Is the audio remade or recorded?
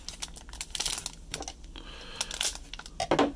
recorded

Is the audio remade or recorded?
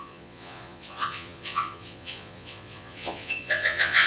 remade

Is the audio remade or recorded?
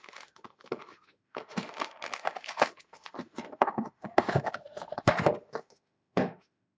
remade